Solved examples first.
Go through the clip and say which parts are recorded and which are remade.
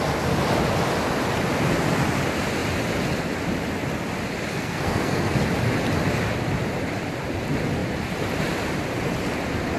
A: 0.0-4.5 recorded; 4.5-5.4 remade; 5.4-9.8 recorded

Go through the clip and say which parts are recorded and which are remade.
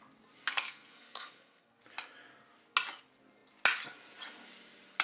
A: 0.0-0.5 recorded; 0.5-1.8 remade; 1.8-5.0 recorded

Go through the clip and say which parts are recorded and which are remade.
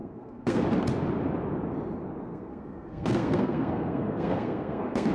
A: 0.0-0.6 remade; 0.6-2.3 recorded; 2.3-5.1 remade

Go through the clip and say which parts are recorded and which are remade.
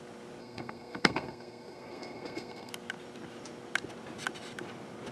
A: 0.0-0.4 recorded; 0.4-2.7 remade; 2.7-5.1 recorded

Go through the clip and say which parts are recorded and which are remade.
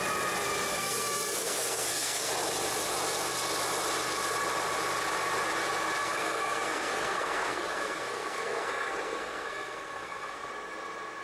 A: 0.0-0.7 recorded; 0.7-2.3 remade; 2.3-6.0 recorded; 6.0-10.5 remade; 10.5-11.2 recorded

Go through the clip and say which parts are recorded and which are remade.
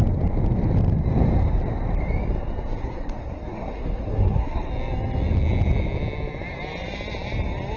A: 0.0-2.8 recorded; 2.8-4.7 remade; 4.7-7.8 recorded